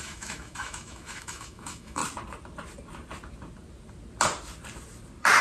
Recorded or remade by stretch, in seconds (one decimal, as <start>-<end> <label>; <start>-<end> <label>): 0.0-2.0 remade; 2.0-5.4 recorded